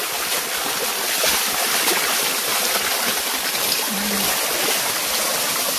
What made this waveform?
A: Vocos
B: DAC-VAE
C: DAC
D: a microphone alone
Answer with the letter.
D